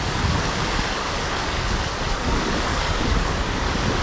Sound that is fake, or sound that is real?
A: fake